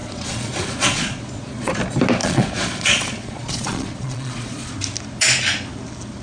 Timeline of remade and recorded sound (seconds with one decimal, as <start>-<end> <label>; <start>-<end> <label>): 0.0-1.7 remade; 1.7-2.2 recorded; 2.2-4.7 remade; 4.7-6.2 recorded